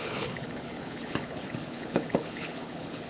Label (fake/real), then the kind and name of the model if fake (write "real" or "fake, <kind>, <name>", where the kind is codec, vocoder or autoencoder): fake, codec, HILCodec